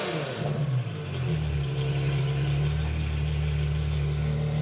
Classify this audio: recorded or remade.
recorded